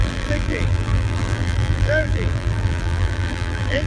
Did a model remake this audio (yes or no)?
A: yes